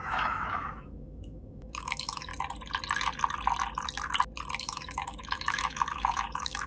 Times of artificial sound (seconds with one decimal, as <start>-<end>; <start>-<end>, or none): 0.0-2.3; 4.6-6.7